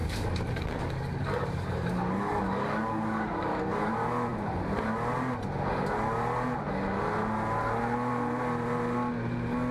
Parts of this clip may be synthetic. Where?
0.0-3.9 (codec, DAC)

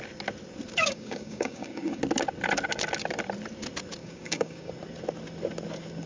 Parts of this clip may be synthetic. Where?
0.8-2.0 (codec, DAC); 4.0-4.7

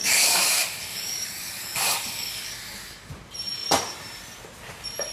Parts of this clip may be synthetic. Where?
0.0-3.1 (codec, DAC)